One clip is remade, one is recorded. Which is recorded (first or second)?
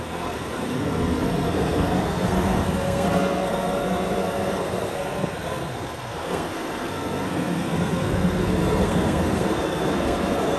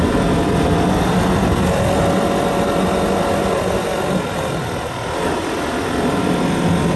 second